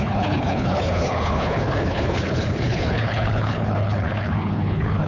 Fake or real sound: fake